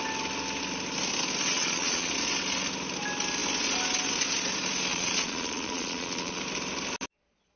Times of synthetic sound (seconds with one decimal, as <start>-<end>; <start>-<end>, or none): 1.5-2.1; 4.9-6.4